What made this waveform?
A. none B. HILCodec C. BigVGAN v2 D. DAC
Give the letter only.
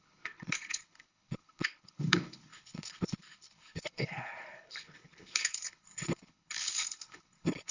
B